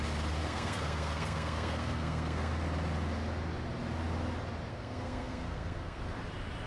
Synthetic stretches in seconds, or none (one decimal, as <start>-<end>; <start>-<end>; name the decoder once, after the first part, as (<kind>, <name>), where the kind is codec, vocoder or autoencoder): 0.4-2.5 (codec, SNAC); 4.7-6.0